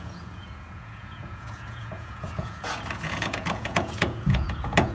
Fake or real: fake